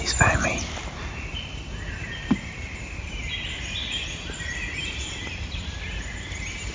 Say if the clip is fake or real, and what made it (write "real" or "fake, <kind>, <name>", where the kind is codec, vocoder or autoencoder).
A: real